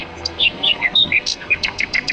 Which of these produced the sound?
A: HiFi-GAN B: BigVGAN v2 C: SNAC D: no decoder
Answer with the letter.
C